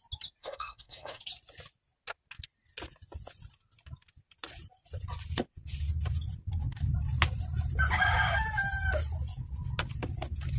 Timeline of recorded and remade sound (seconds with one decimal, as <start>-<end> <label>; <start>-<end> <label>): 0.0-0.4 recorded; 0.4-1.2 remade; 1.2-10.6 recorded